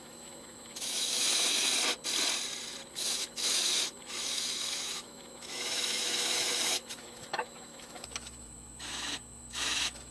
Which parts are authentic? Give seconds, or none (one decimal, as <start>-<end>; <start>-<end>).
1.7-2.9